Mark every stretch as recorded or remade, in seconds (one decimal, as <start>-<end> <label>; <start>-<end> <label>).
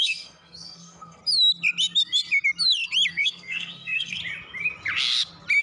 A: 0.0-1.2 remade; 1.2-3.1 recorded; 3.1-4.2 remade; 4.2-5.6 recorded